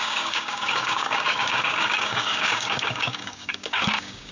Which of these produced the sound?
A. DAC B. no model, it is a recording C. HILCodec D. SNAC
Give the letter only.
A